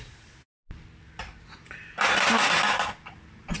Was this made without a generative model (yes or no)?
yes